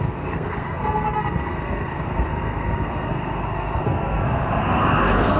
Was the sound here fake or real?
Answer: fake